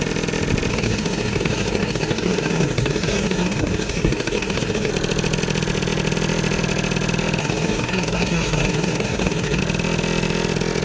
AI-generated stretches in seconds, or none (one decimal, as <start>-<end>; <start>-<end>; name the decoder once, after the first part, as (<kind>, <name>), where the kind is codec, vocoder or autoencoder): 0.7-4.9 (codec, SNAC); 7.4-9.6